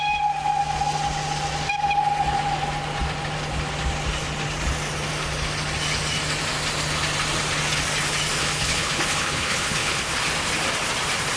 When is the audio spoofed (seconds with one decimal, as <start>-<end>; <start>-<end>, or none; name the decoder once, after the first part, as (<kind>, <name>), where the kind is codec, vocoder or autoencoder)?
8.4-10.0 (codec, HILCodec)